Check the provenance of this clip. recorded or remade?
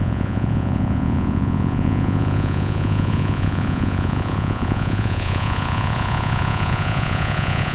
remade